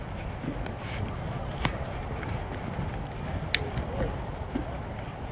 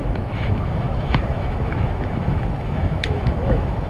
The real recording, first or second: first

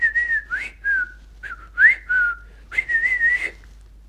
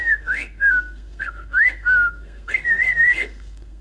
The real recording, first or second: first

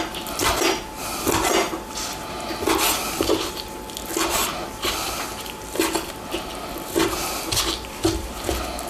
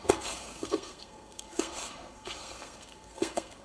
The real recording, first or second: first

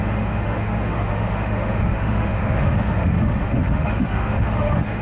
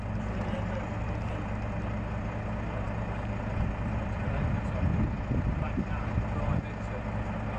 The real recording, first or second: second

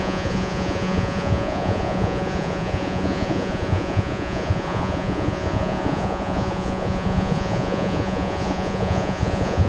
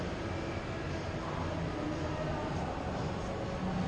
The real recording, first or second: second